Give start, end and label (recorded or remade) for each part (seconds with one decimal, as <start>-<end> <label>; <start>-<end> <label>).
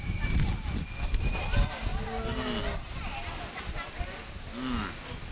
0.0-5.3 recorded